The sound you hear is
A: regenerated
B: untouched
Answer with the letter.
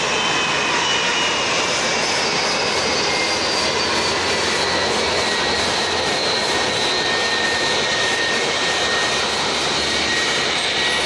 B